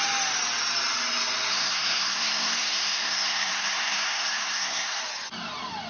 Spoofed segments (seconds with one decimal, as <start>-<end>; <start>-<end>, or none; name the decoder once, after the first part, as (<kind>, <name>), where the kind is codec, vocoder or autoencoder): 1.5-5.0 (codec, SNAC)